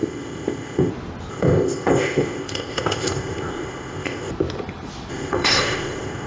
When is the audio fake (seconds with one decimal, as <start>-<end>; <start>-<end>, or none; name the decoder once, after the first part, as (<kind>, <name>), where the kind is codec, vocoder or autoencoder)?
0.0-0.9 (codec, ZipCodec); 1.3-4.3; 5.1-6.3